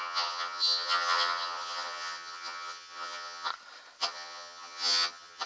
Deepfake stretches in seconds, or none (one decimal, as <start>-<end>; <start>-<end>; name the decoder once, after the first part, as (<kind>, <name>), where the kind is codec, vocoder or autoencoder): 0.0-3.5 (vocoder, HiFi-GAN); 4.0-5.5